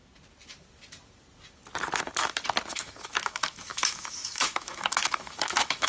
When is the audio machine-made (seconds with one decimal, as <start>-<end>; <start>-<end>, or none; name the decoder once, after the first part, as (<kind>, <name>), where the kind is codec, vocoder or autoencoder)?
2.7-5.9 (autoencoder, DAC-VAE)